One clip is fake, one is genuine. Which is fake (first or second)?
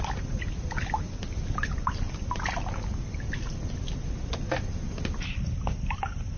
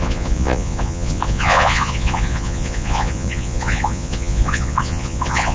second